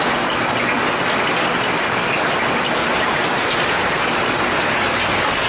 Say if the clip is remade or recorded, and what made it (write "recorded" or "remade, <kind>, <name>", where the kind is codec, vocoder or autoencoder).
recorded